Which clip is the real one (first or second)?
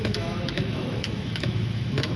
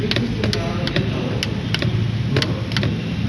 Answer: second